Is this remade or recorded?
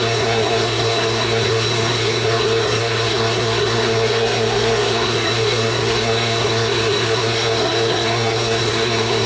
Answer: remade